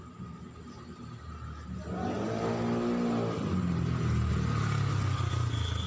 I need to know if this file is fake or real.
real